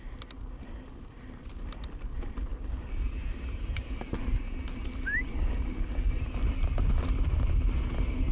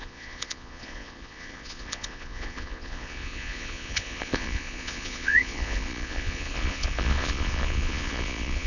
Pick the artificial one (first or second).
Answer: second